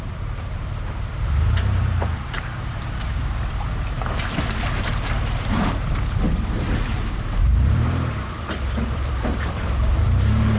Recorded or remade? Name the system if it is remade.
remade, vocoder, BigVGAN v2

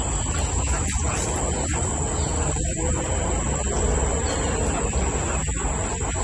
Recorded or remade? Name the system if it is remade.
recorded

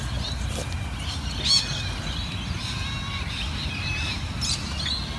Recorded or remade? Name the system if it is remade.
recorded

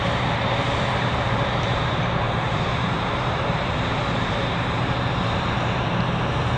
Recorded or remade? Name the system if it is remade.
remade, vocoder, BigVGAN v2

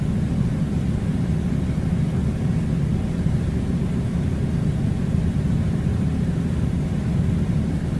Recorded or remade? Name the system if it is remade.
remade, vocoder, BigVGAN v2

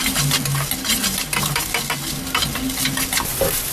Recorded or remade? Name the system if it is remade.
recorded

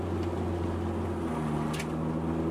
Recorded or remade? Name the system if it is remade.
recorded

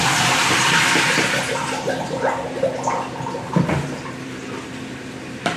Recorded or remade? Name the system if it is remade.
remade, vocoder, BigVGAN v2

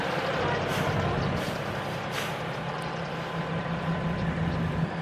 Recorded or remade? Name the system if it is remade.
recorded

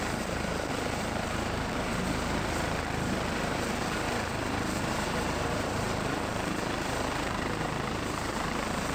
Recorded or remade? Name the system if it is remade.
remade, vocoder, BigVGAN v2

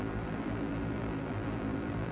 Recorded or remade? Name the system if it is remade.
remade, vocoder, BigVGAN v2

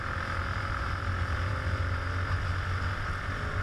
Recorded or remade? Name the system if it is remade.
recorded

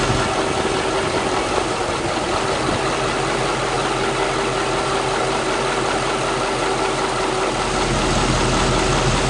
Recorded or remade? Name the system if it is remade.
recorded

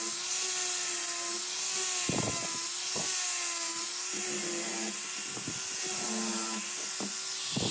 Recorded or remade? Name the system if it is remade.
recorded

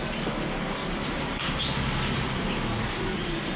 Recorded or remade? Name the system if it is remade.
recorded